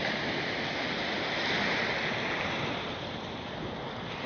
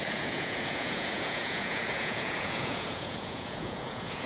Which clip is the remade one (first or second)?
second